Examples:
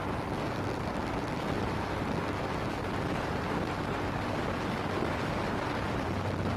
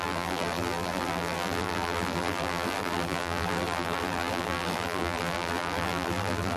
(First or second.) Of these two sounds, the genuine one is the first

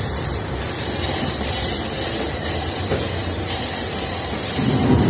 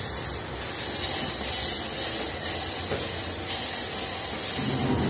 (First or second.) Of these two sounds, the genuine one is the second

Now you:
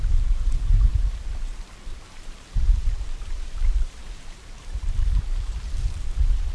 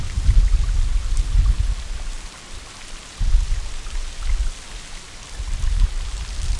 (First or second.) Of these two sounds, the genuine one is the second